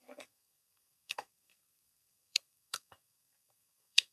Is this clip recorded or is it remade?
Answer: remade